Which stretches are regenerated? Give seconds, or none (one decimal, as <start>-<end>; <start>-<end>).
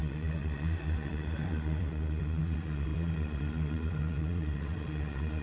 0.0-5.4